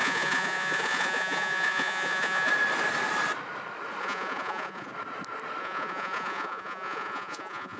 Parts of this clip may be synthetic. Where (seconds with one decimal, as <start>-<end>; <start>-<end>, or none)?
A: 0.0-2.5; 4.0-4.9; 5.6-7.8